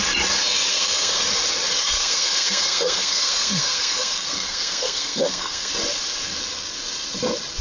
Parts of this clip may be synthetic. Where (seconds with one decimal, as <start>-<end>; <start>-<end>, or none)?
0.7-1.2; 1.8-5.7